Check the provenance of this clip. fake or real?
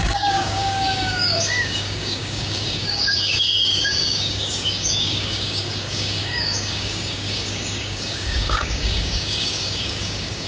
fake